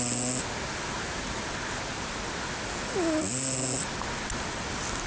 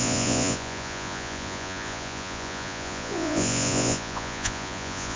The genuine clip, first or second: first